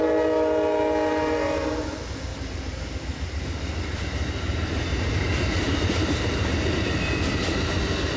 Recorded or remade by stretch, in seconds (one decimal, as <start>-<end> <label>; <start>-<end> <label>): 0.0-2.3 recorded; 2.3-3.8 remade; 3.8-4.9 recorded; 4.9-7.1 remade; 7.1-8.2 recorded